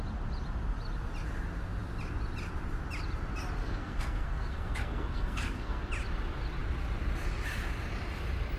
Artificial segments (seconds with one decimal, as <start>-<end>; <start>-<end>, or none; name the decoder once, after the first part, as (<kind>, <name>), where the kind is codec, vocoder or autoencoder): 3.6-5.9 (codec, SNAC)